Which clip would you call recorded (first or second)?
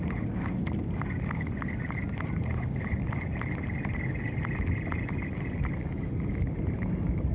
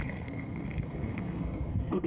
first